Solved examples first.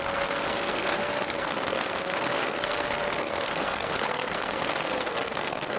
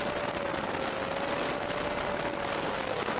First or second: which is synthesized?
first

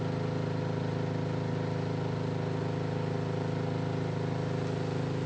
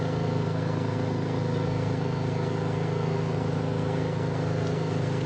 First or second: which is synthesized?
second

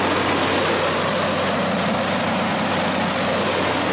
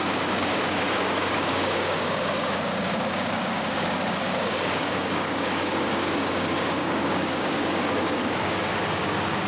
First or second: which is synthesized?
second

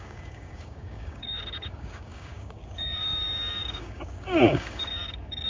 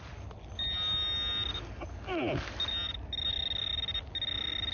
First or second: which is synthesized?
first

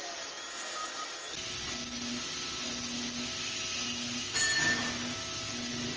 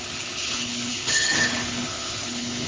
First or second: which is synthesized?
second